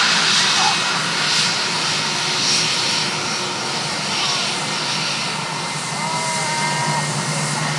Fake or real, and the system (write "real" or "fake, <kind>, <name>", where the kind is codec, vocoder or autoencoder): real